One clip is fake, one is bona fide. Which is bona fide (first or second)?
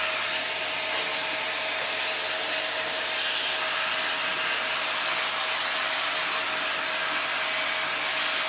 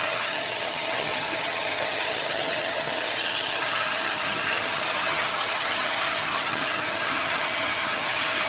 first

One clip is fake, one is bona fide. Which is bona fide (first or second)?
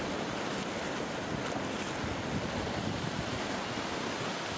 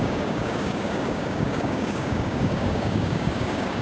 first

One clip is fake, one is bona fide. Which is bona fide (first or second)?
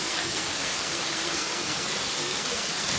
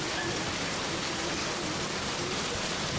second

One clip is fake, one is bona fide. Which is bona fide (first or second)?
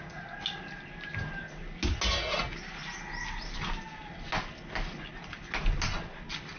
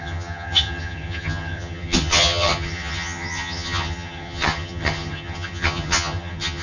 first